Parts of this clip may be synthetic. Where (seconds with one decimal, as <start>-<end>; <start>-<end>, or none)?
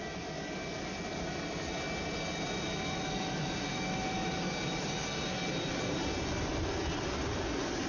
3.7-4.3